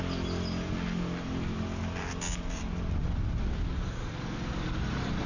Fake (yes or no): no